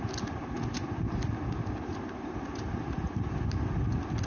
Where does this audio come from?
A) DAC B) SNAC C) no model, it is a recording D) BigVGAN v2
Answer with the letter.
C